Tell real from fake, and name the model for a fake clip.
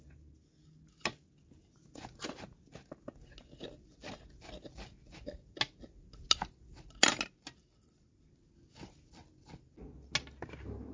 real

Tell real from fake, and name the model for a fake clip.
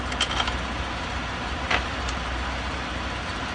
real